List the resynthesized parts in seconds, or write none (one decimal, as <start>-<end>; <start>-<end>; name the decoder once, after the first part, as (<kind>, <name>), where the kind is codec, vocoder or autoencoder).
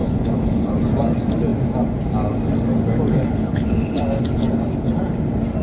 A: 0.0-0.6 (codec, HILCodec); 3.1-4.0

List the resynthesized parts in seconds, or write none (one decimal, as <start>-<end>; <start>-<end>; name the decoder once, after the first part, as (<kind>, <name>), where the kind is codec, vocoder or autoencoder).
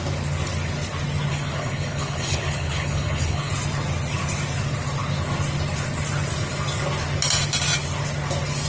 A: 1.3-3.5 (codec, HILCodec)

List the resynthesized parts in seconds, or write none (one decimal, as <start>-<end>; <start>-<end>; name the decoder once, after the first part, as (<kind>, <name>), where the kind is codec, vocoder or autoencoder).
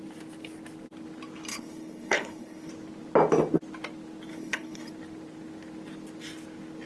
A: 1.5-2.7 (codec, HILCodec); 4.3-4.9